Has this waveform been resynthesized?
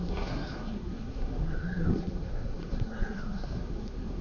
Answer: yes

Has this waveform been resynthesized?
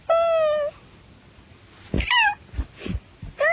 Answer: no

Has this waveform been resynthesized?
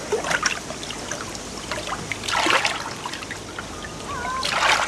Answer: no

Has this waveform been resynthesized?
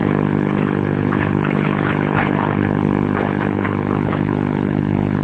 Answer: yes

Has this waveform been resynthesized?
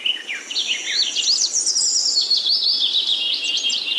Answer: no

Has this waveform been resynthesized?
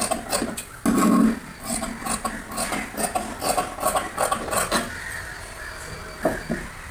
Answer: no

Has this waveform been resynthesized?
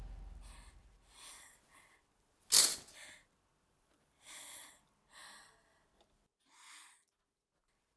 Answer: no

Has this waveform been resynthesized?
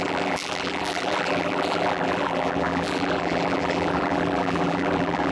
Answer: yes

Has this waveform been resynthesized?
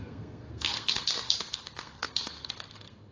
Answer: yes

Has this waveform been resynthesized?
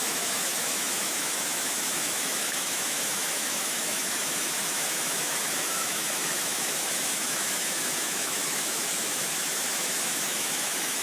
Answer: yes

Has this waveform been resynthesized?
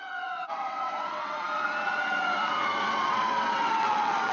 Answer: yes